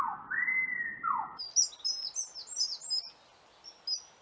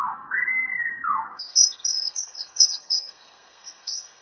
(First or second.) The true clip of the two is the first